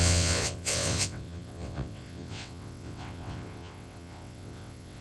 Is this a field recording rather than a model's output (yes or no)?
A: no